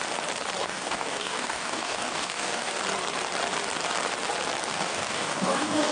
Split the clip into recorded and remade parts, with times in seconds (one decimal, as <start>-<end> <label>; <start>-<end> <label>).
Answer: 0.0-0.6 recorded; 0.6-2.8 remade; 2.8-4.7 recorded; 4.7-5.9 remade